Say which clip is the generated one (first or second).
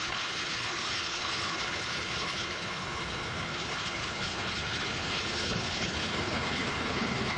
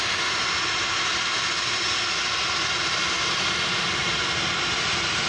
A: first